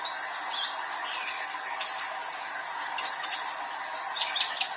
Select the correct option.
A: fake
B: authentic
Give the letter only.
B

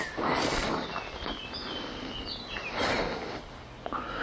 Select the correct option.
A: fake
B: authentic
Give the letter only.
B